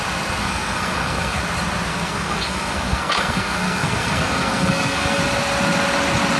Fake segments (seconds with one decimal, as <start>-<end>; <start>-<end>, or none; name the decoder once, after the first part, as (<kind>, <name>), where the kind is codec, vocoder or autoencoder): 0.4-1.4 (codec, SNAC); 1.9-5.2